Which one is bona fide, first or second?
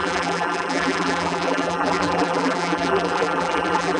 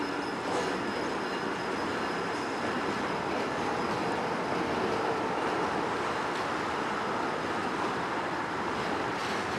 second